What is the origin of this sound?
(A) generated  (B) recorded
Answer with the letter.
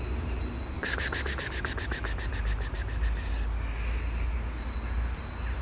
B